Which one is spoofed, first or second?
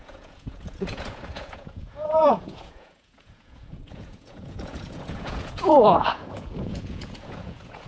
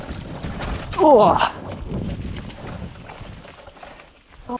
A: first